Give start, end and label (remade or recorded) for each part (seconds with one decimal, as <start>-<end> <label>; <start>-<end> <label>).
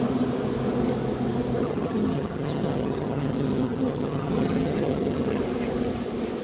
0.0-1.6 recorded; 1.6-5.4 remade; 5.4-6.4 recorded